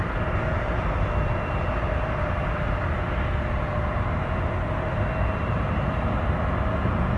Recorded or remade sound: recorded